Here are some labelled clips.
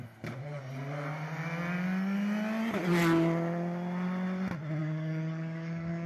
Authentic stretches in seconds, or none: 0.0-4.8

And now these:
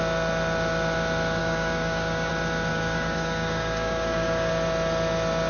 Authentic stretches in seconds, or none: 0.0-1.4; 2.3-2.7; 4.5-5.5

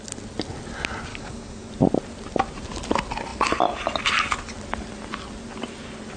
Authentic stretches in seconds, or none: 0.0-1.1; 1.7-6.2

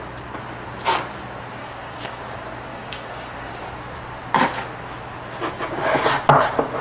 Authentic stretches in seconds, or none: 0.0-1.6; 2.2-2.7; 3.5-6.8

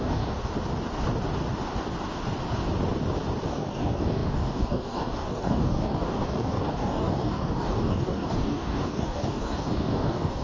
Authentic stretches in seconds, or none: 0.5-3.5